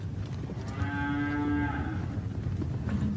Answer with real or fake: real